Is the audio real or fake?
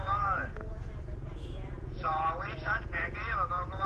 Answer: fake